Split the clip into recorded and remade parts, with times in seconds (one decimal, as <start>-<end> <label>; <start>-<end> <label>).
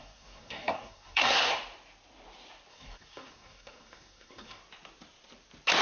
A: 0.0-1.5 remade; 1.5-2.7 recorded; 2.7-4.6 remade; 4.6-5.8 recorded